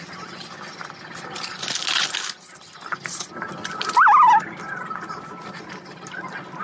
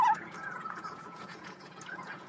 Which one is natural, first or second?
first